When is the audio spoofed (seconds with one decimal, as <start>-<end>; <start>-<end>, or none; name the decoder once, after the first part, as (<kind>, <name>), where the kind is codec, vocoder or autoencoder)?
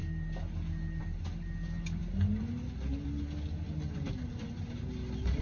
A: none